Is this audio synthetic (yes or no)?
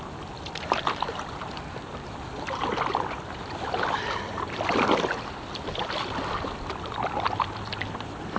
yes